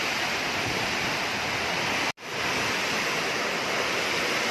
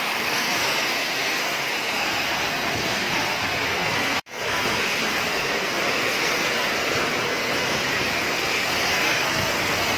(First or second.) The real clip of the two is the first